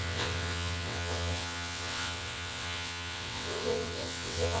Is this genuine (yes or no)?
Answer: no